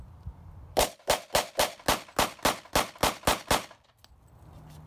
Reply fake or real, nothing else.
real